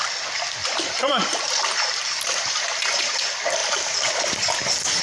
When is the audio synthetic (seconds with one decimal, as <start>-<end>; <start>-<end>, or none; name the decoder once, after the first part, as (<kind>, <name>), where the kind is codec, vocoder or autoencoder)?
0.6-3.0 (vocoder, BigVGAN v2)